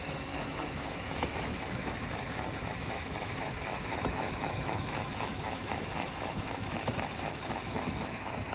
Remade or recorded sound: remade